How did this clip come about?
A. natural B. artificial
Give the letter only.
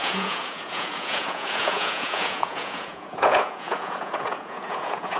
B